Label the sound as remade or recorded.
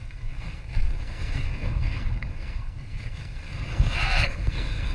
remade